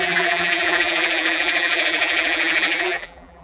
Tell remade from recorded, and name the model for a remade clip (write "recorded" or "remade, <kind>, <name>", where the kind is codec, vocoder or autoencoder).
remade, vocoder, BigVGAN v2